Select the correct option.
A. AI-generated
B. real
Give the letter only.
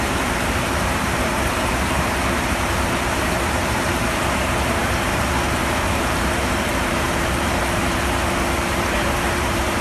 A